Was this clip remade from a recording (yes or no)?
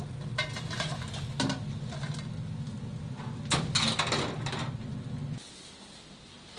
no